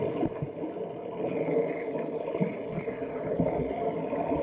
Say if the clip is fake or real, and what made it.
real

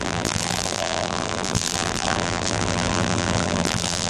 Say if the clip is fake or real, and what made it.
fake, vocoder, BigVGAN v2